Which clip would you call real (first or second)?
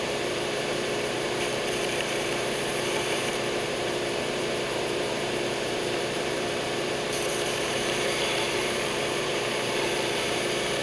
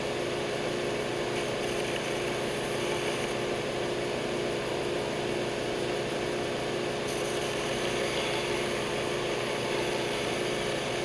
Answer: second